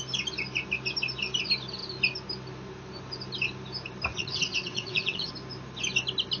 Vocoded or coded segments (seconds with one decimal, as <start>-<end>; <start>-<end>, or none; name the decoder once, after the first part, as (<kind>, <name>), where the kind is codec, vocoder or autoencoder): 4.1-5.3 (vocoder, WaveNeXt)